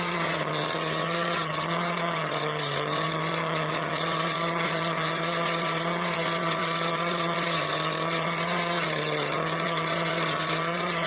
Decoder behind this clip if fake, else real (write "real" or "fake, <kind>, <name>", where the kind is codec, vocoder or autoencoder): fake, vocoder, HiFi-GAN